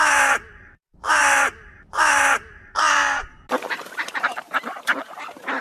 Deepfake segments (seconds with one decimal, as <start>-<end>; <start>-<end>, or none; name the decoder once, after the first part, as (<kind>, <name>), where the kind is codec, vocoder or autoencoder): 0.0-3.3 (vocoder, BigVGAN v2); 4.1-5.6